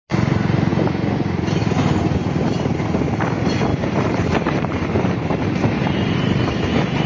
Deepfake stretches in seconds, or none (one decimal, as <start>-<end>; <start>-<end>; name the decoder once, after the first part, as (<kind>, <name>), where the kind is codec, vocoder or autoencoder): 3.7-6.4 (vocoder, BigVGAN v2)